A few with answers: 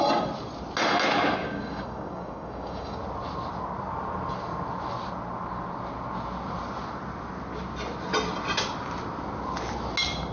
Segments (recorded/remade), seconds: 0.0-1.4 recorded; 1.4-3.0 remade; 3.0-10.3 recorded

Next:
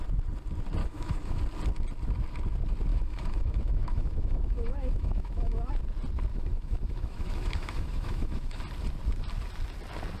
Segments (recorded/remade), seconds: 0.0-0.8 recorded; 0.8-1.4 remade; 1.4-2.9 recorded; 2.9-5.7 remade; 5.7-6.3 recorded; 6.3-8.6 remade; 8.6-10.2 recorded

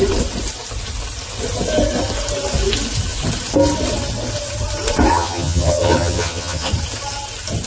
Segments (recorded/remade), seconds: 0.0-5.1 recorded; 5.1-6.7 remade; 6.7-7.7 recorded

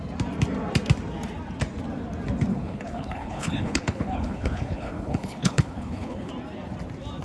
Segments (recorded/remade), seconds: 0.0-2.5 recorded; 2.5-6.3 remade; 6.3-7.2 recorded

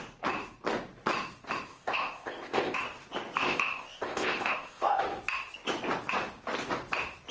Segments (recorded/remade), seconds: 0.0-1.7 recorded; 1.7-2.8 remade; 2.8-3.4 recorded; 3.4-5.0 remade; 5.0-7.3 recorded

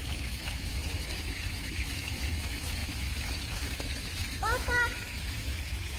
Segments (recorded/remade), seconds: 0.0-6.0 remade

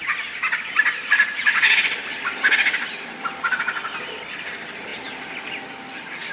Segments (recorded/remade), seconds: 0.0-6.3 recorded